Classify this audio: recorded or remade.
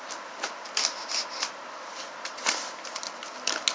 recorded